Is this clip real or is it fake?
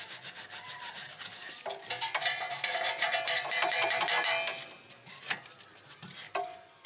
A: real